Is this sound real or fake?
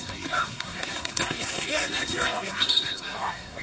fake